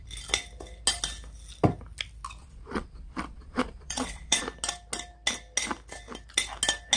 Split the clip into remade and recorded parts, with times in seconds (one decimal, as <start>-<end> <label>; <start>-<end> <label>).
0.0-2.4 recorded; 2.4-4.4 remade; 4.4-7.0 recorded